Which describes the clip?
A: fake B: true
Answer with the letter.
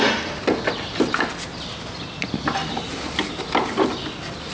B